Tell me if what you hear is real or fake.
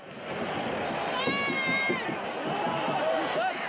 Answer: real